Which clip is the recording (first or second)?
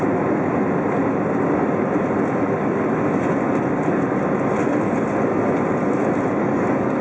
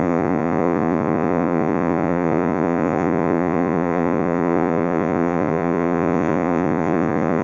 first